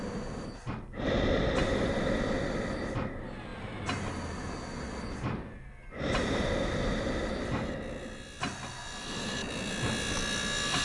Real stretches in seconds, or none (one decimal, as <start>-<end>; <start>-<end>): 0.0-10.8